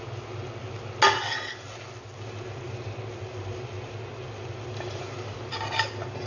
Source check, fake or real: real